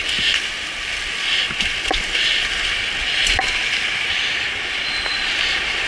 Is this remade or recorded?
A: recorded